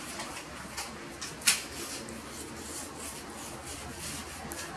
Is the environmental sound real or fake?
real